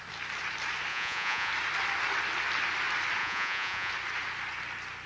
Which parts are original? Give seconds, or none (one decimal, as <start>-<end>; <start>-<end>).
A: 0.0-0.9; 1.5-3.2; 3.9-5.1

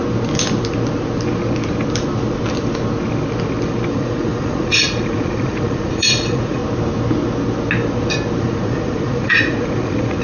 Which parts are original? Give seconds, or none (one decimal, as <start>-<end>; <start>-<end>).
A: 0.0-3.9; 6.6-8.4

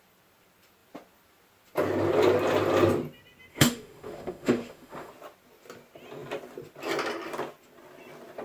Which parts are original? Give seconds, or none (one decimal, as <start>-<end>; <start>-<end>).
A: 0.0-3.5; 5.1-8.4